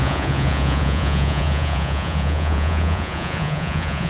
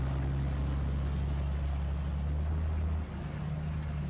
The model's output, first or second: first